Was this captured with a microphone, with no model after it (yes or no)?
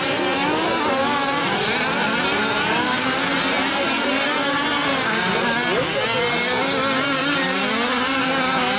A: yes